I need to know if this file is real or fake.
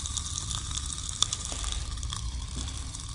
fake